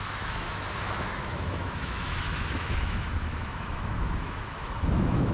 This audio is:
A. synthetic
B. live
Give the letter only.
A